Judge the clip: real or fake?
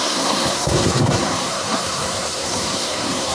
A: fake